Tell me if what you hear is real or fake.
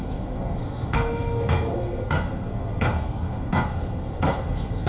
fake